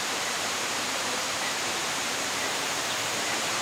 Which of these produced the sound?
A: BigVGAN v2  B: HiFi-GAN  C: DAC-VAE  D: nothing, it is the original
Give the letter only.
A